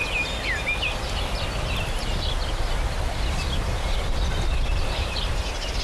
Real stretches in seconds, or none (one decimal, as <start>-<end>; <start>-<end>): 0.0-4.5; 5.3-5.8